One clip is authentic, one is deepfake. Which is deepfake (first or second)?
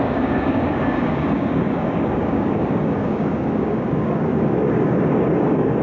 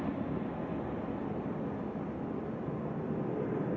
first